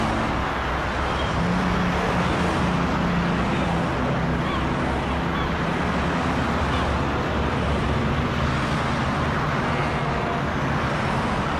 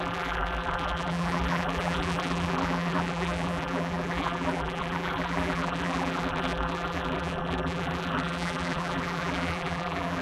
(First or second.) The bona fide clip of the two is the first